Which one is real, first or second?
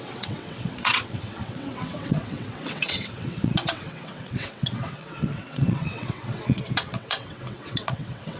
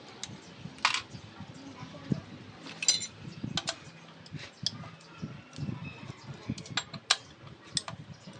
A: second